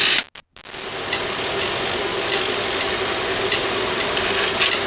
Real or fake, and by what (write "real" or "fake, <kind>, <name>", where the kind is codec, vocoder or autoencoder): real